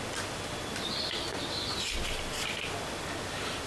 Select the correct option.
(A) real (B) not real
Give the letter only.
A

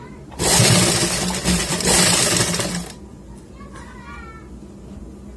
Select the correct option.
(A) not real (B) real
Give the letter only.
B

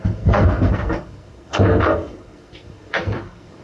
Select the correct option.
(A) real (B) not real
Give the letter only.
B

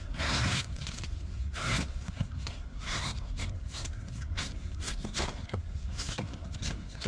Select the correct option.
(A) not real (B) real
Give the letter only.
A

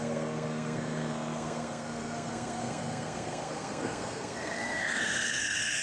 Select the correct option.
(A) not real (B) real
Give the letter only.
A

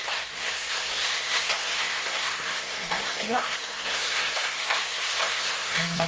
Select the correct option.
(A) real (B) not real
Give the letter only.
B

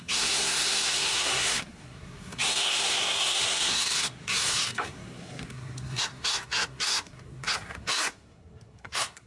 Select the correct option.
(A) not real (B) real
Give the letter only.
A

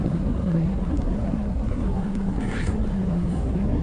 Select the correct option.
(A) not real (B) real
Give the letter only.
A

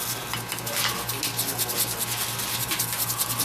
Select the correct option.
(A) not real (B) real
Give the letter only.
B